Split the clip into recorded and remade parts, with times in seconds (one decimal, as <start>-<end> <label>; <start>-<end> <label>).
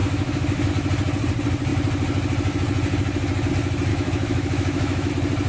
0.0-0.7 remade; 0.7-3.9 recorded; 3.9-5.1 remade; 5.1-5.5 recorded